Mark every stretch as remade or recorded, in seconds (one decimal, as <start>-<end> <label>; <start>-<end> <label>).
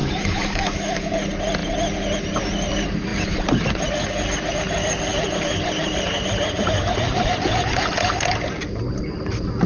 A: 0.0-1.1 remade; 1.1-9.7 recorded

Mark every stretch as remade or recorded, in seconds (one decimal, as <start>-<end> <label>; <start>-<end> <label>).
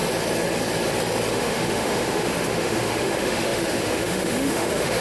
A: 0.0-1.3 recorded; 1.3-5.0 remade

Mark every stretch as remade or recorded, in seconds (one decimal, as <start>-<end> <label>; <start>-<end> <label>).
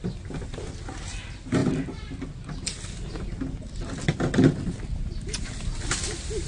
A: 0.0-6.5 recorded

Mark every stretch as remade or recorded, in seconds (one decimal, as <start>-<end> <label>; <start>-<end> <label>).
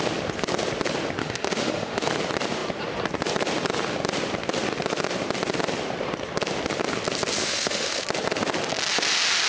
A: 0.0-1.2 recorded; 1.2-2.1 remade; 2.1-7.4 recorded; 7.4-8.0 remade; 8.0-9.5 recorded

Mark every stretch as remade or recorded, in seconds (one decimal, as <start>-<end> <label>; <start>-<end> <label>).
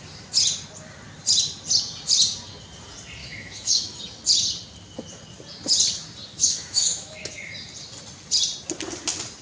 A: 0.0-3.2 recorded; 3.2-4.0 remade; 4.0-6.3 recorded; 6.3-7.3 remade; 7.3-9.4 recorded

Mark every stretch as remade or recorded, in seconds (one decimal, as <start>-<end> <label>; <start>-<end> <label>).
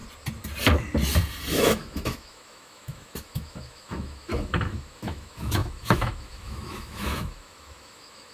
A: 0.0-1.5 recorded; 1.5-8.3 remade